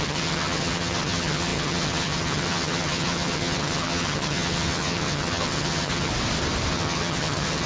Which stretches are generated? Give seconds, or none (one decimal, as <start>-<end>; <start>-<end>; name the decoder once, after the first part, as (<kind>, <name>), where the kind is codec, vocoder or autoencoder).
0.0-6.1 (vocoder, HiFi-GAN); 6.7-7.7